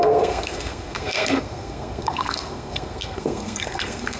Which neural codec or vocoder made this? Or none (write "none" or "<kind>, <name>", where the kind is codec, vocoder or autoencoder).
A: codec, SNAC